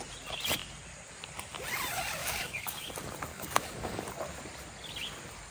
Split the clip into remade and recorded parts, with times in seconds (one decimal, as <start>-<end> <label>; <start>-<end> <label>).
0.0-2.2 recorded; 2.2-2.9 remade; 2.9-3.3 recorded; 3.3-4.0 remade; 4.0-5.5 recorded